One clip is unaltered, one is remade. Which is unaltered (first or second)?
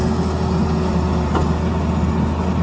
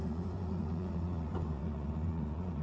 first